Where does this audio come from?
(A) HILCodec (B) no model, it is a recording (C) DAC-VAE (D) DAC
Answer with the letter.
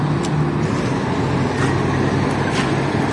B